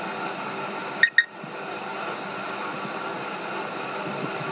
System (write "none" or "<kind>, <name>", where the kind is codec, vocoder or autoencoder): none